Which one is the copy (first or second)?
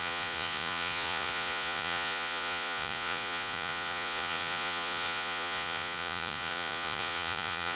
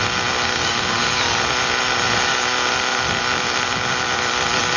first